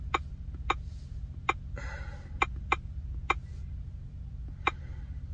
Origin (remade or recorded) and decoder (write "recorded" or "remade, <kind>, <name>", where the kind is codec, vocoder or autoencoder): recorded